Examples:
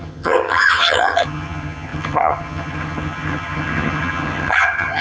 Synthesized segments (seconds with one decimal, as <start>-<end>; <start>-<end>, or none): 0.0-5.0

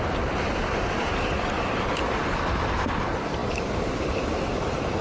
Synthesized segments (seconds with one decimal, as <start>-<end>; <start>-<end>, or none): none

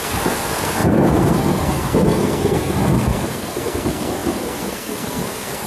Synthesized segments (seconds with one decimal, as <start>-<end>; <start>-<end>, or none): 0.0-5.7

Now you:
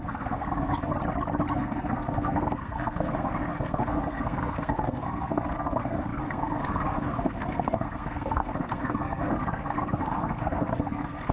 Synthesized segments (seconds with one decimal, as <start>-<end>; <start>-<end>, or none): 0.0-0.9; 1.5-11.3

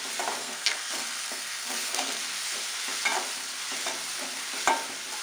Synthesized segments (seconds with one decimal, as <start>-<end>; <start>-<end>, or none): 0.4-2.2

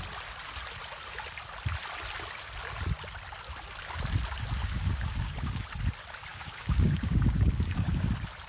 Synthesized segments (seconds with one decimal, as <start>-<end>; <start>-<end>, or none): 4.6-5.6; 6.3-8.1